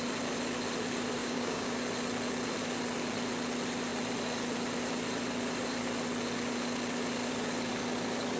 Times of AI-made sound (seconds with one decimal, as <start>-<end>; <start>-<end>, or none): 1.2-1.8